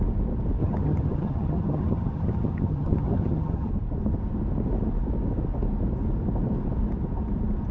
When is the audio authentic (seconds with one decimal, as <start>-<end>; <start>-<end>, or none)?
0.0-0.6; 3.7-7.7